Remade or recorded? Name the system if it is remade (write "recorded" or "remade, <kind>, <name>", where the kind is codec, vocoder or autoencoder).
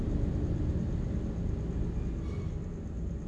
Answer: recorded